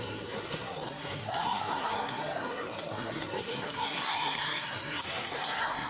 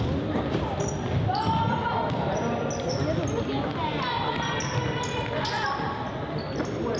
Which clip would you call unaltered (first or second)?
second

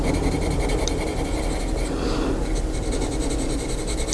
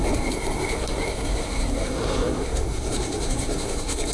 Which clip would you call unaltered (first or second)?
first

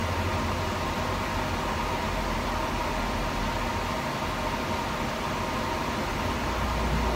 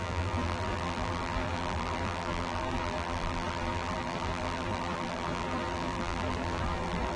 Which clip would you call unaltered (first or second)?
first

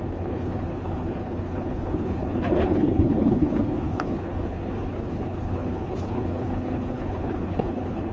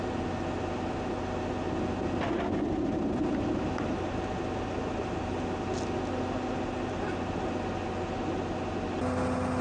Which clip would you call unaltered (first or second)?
second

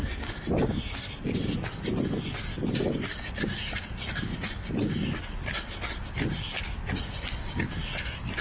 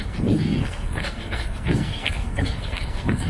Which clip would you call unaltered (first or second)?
first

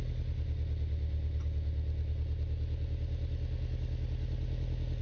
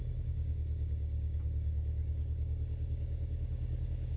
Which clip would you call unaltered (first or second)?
first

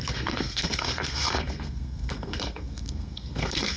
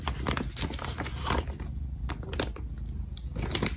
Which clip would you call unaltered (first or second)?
second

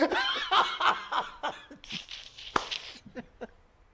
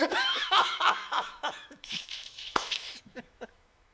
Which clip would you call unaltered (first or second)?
first